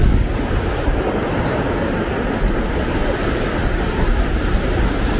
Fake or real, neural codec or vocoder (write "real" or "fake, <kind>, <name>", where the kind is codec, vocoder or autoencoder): real